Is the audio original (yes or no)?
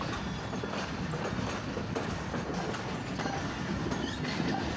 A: yes